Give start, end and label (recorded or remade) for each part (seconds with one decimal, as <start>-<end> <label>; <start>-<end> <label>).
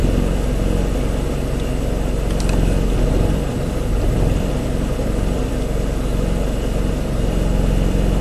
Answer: 0.0-3.1 recorded; 3.1-8.2 remade